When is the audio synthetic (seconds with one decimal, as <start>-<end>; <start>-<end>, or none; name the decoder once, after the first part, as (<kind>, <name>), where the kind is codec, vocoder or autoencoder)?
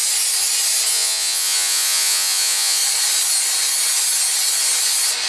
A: 0.9-2.8 (vocoder, Vocos)